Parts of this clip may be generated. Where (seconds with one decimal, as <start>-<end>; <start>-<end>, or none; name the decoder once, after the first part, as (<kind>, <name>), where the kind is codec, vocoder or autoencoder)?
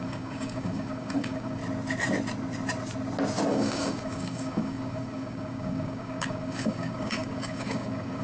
0.0-1.6 (codec, DAC); 3.5-8.2